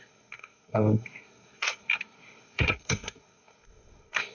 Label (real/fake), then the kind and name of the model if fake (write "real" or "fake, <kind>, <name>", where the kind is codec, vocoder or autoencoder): fake, codec, SNAC